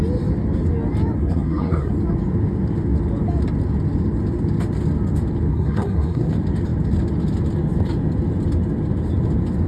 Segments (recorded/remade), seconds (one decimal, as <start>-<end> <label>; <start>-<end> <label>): 0.0-1.2 recorded; 1.2-1.9 remade; 1.9-5.5 recorded; 5.5-6.3 remade; 6.3-9.7 recorded